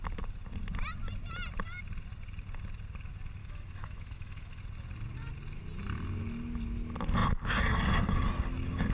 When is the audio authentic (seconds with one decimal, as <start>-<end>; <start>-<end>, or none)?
0.0-3.4; 4.6-8.9